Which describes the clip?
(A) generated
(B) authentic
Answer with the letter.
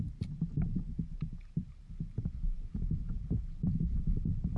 A